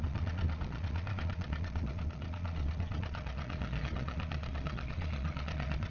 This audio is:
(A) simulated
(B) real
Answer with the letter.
A